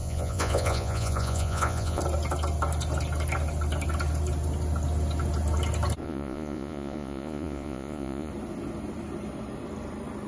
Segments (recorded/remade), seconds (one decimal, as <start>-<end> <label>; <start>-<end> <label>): 0.0-2.0 remade; 2.0-6.0 recorded; 6.0-8.3 remade; 8.3-10.3 recorded